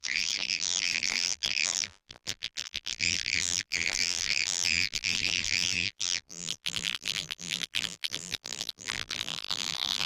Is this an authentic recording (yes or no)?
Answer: no